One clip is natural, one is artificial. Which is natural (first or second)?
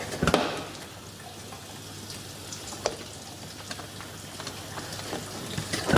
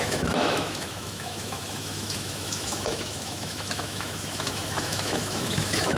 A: first